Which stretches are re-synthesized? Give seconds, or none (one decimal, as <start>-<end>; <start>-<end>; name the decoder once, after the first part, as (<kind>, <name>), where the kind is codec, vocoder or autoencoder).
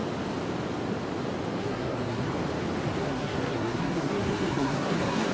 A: 1.6-2.3 (codec, SNAC); 3.0-5.3